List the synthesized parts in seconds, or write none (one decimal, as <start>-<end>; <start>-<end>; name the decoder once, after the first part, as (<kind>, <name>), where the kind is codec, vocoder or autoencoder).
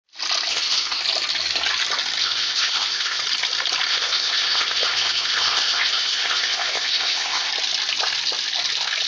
0.5-1.0 (codec, ZipCodec); 2.2-3.2; 3.9-7.5